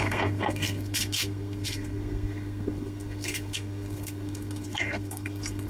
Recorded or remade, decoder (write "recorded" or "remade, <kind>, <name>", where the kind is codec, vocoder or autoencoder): remade, codec, SNAC